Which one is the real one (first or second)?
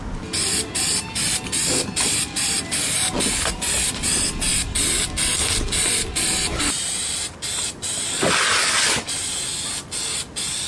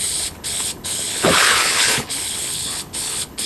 first